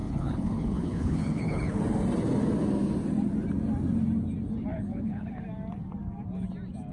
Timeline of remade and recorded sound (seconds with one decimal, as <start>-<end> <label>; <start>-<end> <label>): 0.0-1.8 remade; 1.8-4.7 recorded; 4.7-5.4 remade; 5.4-6.9 recorded

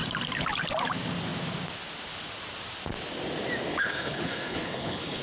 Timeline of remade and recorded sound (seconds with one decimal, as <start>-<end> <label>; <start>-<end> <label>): 0.0-3.7 recorded; 3.7-5.2 remade

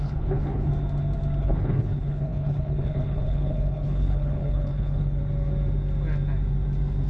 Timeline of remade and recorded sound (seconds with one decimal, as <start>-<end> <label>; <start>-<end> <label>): 0.0-0.7 remade; 0.7-1.4 recorded; 1.4-5.2 remade; 5.2-7.1 recorded

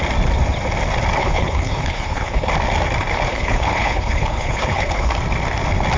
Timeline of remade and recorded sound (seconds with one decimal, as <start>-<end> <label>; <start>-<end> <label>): 0.0-1.2 recorded; 1.2-2.5 remade; 2.5-3.3 recorded; 3.3-5.1 remade; 5.1-6.0 recorded

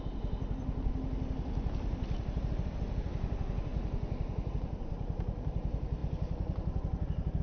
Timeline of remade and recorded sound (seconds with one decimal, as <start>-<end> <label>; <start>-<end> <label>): 0.0-7.4 recorded

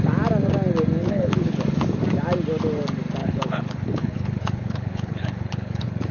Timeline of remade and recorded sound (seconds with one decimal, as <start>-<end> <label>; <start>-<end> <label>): 0.0-1.0 recorded; 1.0-1.6 remade; 1.6-3.2 recorded; 3.2-6.1 remade